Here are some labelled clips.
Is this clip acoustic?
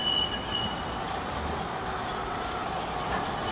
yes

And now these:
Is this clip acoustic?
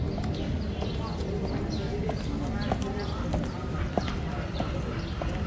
yes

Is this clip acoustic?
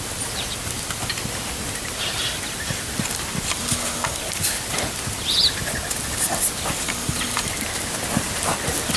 yes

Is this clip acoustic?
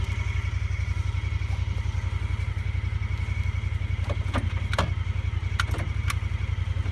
yes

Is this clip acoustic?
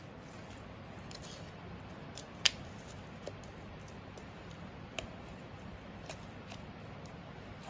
yes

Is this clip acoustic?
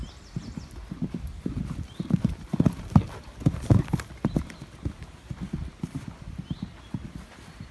yes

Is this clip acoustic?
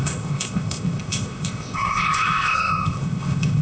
no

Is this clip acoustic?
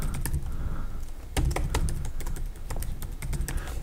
yes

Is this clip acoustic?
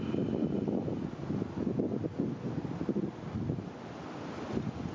yes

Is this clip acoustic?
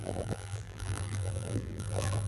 no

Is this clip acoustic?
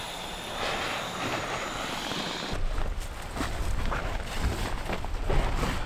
yes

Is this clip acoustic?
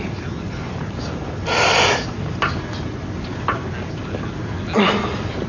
yes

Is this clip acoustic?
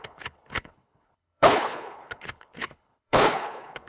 no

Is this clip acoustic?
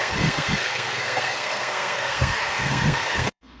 no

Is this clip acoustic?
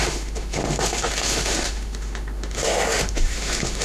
no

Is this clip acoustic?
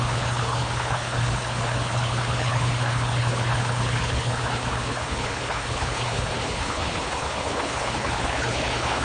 no